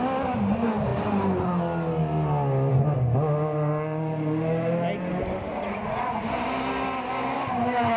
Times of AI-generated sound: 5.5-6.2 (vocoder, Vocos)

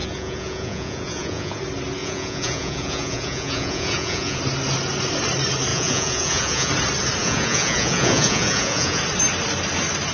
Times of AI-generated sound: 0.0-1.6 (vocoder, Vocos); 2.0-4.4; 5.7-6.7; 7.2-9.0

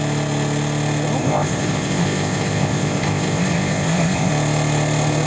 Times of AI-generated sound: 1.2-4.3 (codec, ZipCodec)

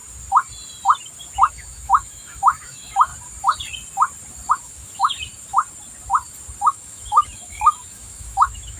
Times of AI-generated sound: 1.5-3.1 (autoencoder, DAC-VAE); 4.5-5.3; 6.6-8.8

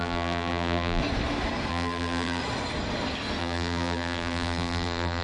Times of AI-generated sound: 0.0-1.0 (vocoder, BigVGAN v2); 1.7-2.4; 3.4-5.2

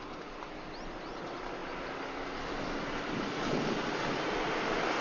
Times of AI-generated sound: none

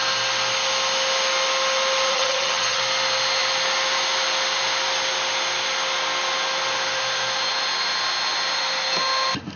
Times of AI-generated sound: 2.1-2.8 (vocoder, HiFi-GAN)

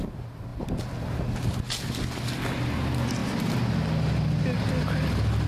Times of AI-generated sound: none